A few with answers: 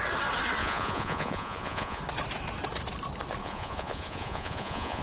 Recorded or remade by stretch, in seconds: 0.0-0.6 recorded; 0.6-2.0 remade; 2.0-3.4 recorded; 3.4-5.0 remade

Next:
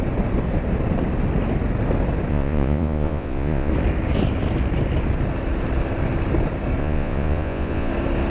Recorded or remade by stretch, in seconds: 0.0-2.3 recorded; 2.3-3.7 remade; 3.7-6.8 recorded; 6.8-7.9 remade; 7.9-8.3 recorded

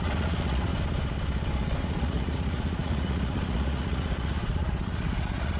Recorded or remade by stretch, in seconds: 0.0-0.7 remade; 0.7-1.8 recorded; 1.8-5.6 remade

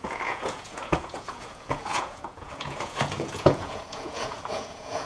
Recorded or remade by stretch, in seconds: 0.0-5.1 remade

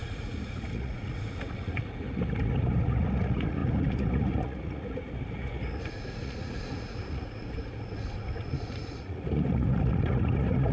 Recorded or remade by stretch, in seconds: 0.0-10.7 remade